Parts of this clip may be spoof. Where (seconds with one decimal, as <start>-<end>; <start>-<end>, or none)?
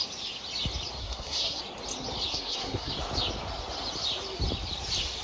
1.0-1.6; 2.3-2.9